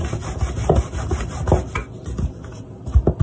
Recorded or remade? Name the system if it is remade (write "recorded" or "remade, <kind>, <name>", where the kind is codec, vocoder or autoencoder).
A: recorded